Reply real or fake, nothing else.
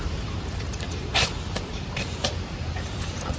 fake